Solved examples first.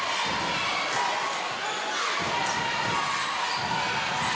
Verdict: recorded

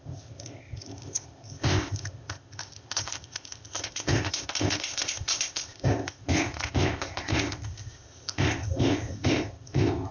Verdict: remade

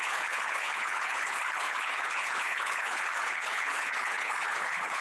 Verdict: remade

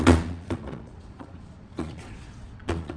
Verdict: remade